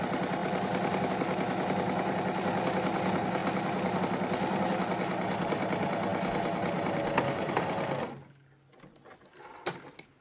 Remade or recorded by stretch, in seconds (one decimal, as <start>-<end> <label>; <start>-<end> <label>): 0.0-10.2 recorded